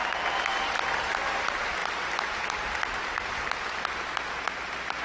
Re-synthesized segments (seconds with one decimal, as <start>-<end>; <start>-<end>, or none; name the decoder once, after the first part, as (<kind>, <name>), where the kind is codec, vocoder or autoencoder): none